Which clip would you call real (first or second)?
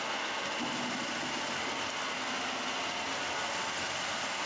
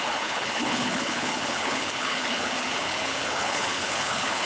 first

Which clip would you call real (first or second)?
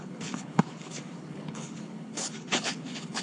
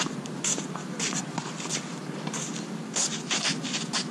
second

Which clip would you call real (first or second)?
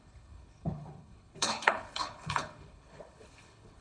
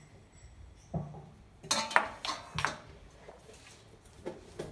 second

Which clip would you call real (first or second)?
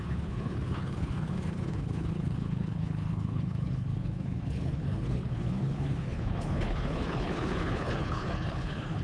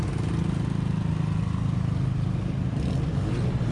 second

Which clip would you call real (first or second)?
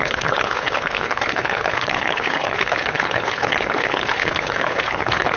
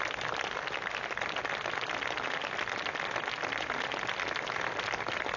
second